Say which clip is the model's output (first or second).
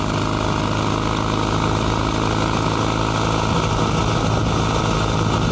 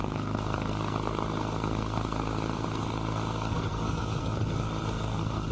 second